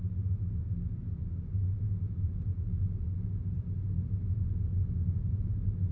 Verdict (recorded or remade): recorded